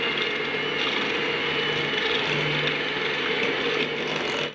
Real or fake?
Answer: real